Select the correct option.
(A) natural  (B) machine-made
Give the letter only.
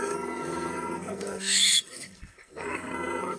B